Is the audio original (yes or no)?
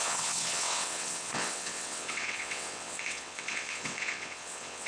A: no